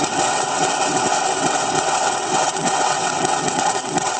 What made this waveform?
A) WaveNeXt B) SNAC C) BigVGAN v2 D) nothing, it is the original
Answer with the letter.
A